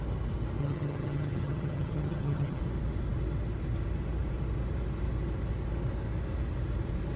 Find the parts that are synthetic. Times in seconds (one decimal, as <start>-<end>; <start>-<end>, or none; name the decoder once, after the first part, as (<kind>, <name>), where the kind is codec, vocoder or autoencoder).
0.6-2.6 (vocoder, HiFi-GAN)